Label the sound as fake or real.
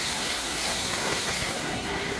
fake